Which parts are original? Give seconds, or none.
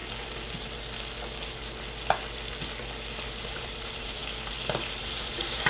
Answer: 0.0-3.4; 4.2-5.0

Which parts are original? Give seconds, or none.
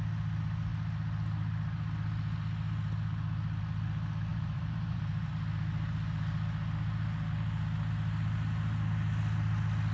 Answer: 0.0-4.3; 5.3-9.9